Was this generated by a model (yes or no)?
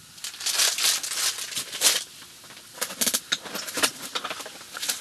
no